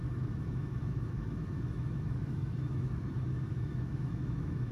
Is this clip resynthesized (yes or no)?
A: yes